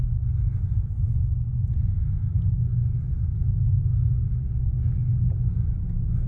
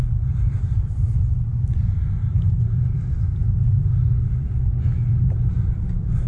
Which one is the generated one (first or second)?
second